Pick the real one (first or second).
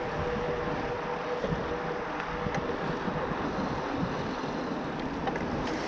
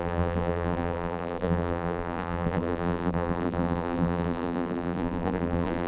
first